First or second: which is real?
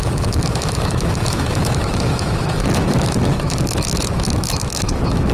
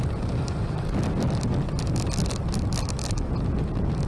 second